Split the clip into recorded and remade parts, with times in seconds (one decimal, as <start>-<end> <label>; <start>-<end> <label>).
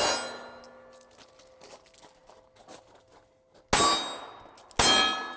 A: 0.0-5.4 recorded